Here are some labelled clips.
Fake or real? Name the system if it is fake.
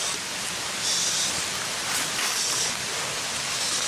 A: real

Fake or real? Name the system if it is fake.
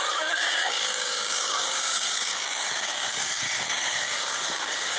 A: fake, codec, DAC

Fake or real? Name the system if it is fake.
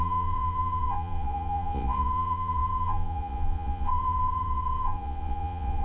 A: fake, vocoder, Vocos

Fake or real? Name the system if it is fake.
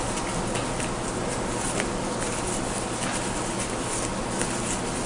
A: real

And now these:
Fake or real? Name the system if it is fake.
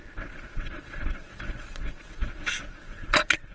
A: fake, vocoder, WaveNeXt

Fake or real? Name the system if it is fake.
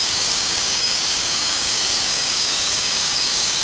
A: fake, codec, DAC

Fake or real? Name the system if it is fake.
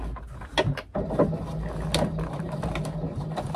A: real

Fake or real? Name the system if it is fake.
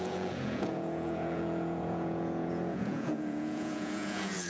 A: fake, vocoder, Vocos